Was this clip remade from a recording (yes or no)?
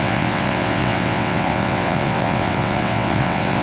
yes